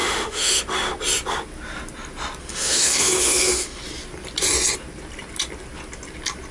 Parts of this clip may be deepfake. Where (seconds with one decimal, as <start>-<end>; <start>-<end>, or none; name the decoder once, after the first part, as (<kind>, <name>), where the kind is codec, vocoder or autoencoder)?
0.0-0.6 (autoencoder, DAC-VAE); 2.4-3.8